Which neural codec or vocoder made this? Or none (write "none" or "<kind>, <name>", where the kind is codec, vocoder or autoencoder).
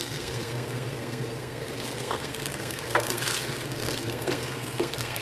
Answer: codec, SNAC